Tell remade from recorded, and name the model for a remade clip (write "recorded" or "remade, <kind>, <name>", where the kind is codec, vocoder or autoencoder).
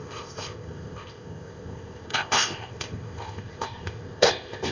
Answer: remade, codec, ZipCodec